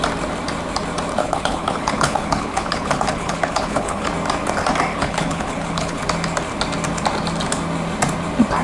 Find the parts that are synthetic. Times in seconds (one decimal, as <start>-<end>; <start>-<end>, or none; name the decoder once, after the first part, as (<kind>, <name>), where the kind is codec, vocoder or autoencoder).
1.2-4.1 (codec, HILCodec); 4.9-6.0